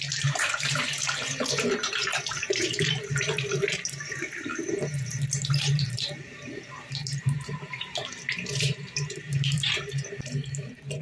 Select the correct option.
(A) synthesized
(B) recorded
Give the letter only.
A